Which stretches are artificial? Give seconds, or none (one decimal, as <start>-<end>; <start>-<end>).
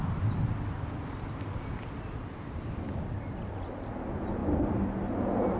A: none